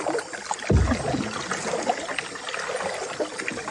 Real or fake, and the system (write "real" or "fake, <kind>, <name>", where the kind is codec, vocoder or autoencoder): real